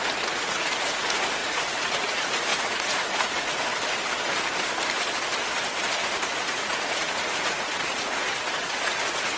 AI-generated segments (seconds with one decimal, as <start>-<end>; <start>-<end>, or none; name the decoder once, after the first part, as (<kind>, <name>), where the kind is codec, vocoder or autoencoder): 0.0-3.7 (vocoder, Vocos); 6.2-9.4